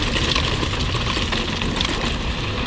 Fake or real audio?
real